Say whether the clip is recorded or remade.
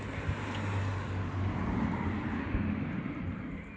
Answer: recorded